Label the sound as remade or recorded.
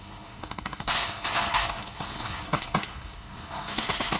remade